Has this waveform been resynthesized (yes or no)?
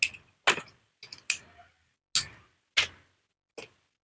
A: no